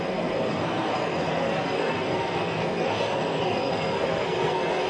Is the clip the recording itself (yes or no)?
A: no